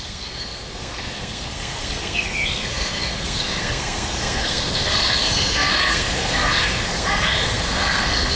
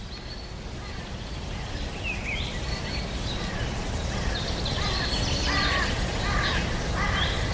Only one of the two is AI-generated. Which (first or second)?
first